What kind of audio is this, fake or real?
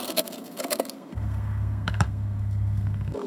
fake